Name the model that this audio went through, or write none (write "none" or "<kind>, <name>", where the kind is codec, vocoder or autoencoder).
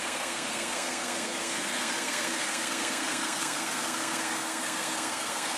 codec, SNAC